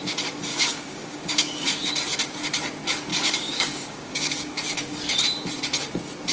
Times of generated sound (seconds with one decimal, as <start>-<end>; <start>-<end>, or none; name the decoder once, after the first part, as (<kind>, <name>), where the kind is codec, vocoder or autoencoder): 0.5-2.0 (codec, DAC); 3.1-5.2